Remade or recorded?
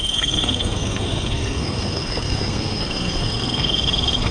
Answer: remade